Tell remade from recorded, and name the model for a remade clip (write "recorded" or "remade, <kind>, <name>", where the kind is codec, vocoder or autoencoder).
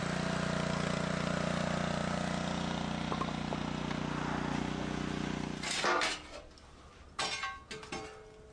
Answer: recorded